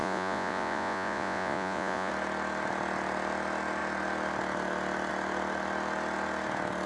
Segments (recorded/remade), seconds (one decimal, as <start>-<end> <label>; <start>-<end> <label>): 0.0-2.1 remade; 2.1-6.9 recorded